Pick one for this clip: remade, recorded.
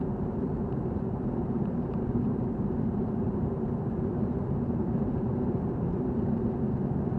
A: remade